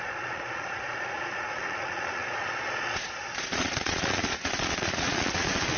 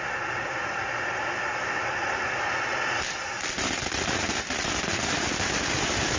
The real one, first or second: second